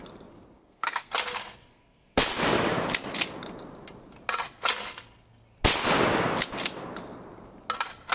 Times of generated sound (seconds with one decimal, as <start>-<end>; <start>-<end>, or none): 0.6-1.1; 1.7-2.2